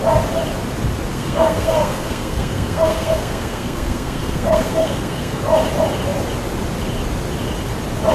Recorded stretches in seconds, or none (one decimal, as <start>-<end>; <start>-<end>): 0.0-1.1; 5.4-8.1